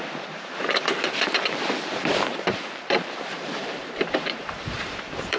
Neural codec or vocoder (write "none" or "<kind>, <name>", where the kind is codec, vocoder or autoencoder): vocoder, BigVGAN v2